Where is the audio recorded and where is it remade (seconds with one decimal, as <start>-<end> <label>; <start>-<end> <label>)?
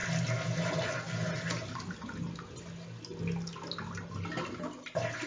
0.0-5.3 recorded